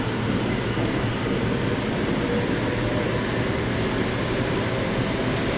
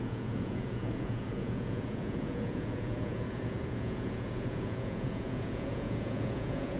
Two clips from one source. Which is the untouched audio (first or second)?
first